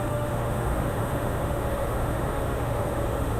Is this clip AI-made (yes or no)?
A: yes